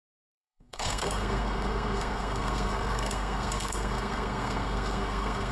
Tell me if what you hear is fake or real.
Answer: fake